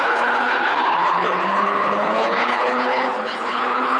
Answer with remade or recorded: remade